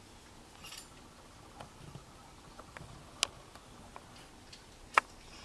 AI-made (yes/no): no